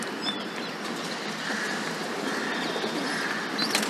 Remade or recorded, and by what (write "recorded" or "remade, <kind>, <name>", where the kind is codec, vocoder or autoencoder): recorded